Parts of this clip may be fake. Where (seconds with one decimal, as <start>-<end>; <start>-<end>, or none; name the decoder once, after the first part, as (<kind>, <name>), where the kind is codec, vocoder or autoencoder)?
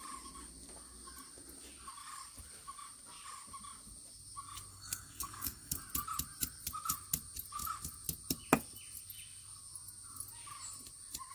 4.7-5.8 (codec, SNAC)